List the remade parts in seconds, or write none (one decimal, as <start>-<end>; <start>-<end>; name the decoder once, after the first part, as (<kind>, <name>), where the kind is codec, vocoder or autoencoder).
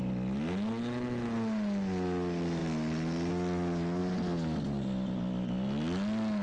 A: none